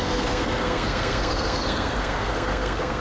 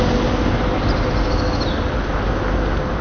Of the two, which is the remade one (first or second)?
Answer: first